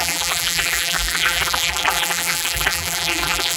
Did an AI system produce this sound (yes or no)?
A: yes